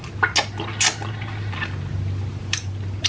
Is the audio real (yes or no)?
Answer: yes